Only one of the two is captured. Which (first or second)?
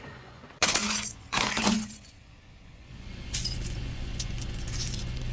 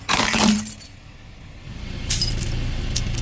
second